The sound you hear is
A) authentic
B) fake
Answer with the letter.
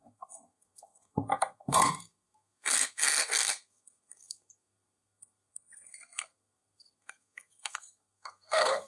B